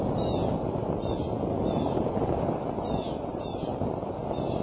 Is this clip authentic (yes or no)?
yes